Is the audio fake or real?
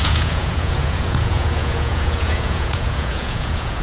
fake